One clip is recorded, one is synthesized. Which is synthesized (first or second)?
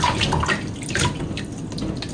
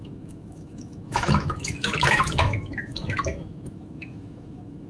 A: second